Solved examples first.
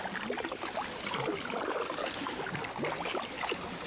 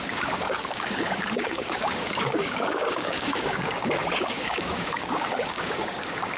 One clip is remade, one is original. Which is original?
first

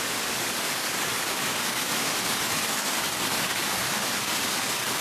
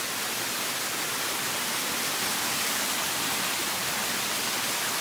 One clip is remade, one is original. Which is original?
second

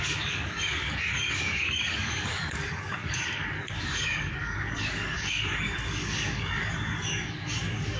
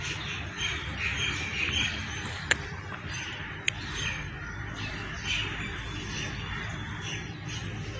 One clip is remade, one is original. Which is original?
second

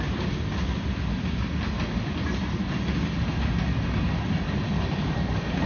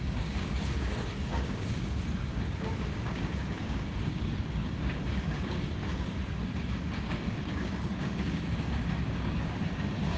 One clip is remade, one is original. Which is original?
first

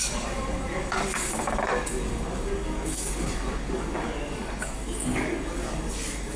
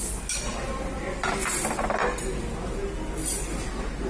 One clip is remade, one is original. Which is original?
second